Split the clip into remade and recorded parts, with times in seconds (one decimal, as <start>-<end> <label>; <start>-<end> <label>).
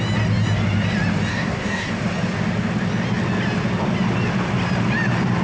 0.0-1.3 recorded; 1.3-1.9 remade; 1.9-5.4 recorded